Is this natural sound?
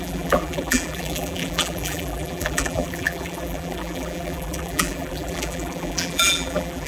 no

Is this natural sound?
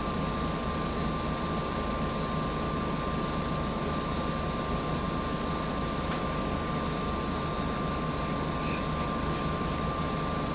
yes